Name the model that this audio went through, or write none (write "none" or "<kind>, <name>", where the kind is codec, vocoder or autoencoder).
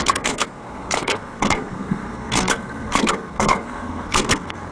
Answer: codec, SNAC